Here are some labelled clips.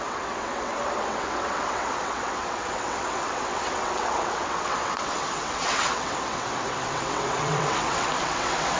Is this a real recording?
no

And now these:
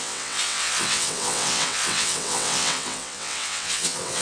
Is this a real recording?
no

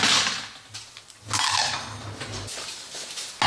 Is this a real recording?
yes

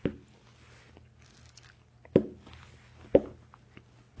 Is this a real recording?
yes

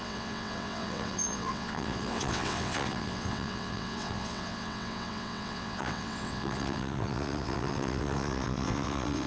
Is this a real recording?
no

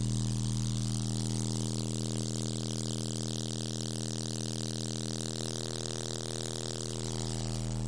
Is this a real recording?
yes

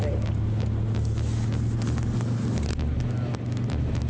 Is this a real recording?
yes